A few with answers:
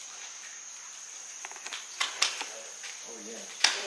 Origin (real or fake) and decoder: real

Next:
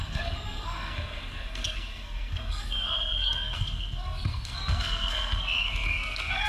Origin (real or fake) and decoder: fake, codec, SNAC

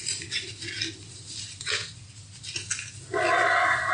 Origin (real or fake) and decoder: real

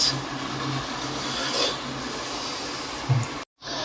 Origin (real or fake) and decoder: real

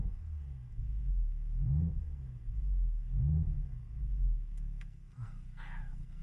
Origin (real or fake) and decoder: fake, codec, SNAC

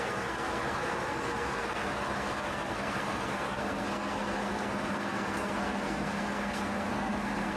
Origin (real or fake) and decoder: fake, codec, SNAC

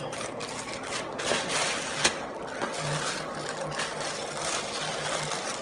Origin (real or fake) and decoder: real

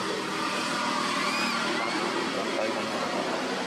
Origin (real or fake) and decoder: real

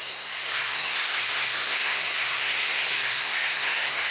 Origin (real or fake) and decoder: fake, codec, SNAC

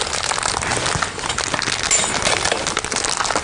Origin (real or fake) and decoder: real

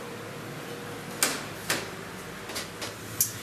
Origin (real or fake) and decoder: real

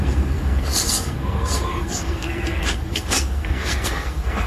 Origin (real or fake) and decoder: fake, codec, SNAC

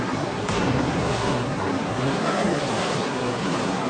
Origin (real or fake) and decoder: fake, codec, SNAC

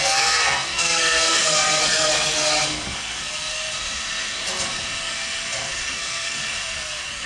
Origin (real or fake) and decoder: fake, codec, SNAC